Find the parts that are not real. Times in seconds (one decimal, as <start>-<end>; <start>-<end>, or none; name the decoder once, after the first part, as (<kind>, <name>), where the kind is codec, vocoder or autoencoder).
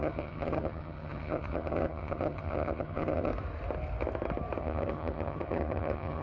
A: 0.0-3.3 (vocoder, HiFi-GAN); 4.6-6.2